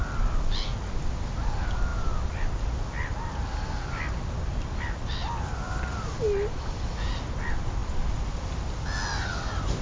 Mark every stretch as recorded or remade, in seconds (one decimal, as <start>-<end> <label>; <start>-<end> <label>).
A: 0.0-1.9 recorded; 1.9-4.8 remade; 4.8-9.8 recorded